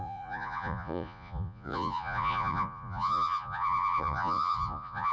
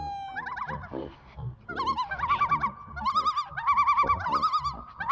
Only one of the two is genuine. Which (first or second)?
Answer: second